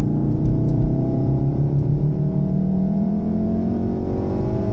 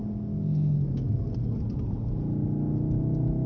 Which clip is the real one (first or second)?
second